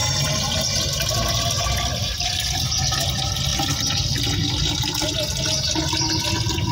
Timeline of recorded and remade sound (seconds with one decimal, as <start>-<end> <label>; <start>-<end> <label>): 0.0-2.0 recorded; 2.0-2.6 remade; 2.6-6.7 recorded